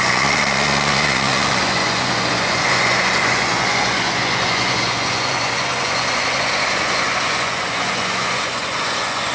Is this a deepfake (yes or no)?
yes